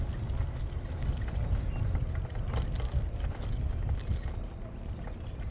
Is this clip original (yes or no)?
yes